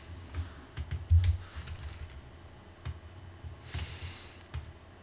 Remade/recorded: recorded